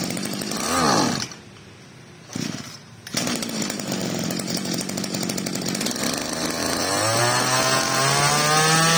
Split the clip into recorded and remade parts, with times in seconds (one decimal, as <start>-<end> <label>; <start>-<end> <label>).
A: 0.0-9.0 recorded